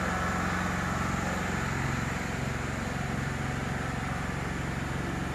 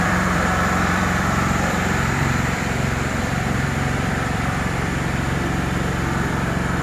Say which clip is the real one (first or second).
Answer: first